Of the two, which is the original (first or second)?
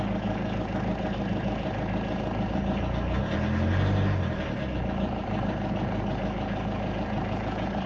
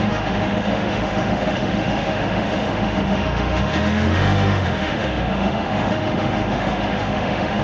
first